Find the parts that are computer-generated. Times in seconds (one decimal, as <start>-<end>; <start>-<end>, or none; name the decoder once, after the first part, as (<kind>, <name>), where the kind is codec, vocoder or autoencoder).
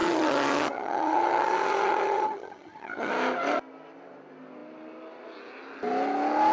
0.0-3.1 (vocoder, HiFi-GAN)